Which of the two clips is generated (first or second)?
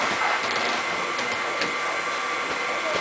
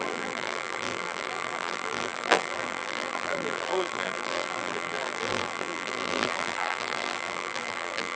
second